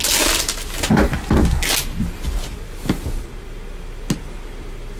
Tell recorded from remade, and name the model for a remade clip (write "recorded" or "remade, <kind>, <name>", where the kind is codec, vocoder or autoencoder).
recorded